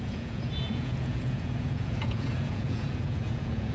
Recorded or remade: remade